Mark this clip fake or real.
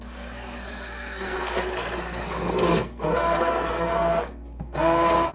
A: fake